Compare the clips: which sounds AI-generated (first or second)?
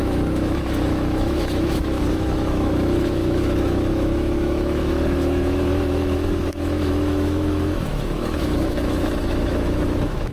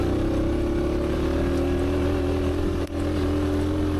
first